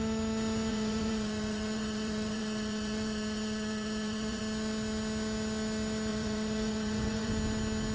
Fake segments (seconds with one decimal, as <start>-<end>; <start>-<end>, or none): 0.7-4.4; 6.1-7.3

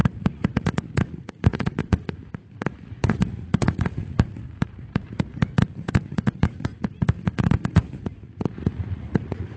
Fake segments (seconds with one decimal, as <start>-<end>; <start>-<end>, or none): 0.0-9.6